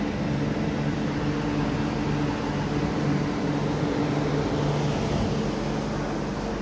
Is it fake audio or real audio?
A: real